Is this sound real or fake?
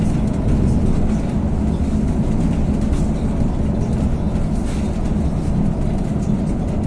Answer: real